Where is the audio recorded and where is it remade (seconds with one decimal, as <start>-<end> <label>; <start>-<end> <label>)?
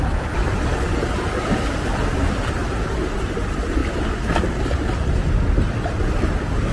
0.0-6.7 recorded